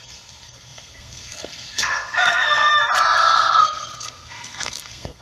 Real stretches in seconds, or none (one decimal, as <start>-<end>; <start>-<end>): 2.7-3.2